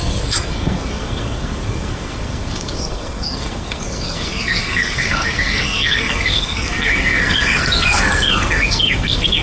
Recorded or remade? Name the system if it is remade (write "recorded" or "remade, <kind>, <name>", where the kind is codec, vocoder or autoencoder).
remade, codec, SNAC